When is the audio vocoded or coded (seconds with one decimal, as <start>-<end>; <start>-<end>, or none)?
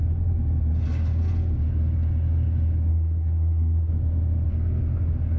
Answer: 2.9-3.9